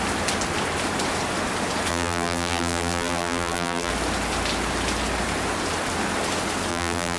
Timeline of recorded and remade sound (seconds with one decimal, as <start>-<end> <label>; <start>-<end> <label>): 0.0-1.9 recorded; 1.9-3.9 remade; 3.9-6.7 recorded; 6.7-7.2 remade